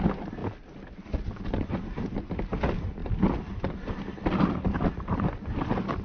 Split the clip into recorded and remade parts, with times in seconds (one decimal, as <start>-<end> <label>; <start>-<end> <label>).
0.0-6.0 recorded